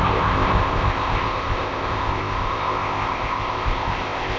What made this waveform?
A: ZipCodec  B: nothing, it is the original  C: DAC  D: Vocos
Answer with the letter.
A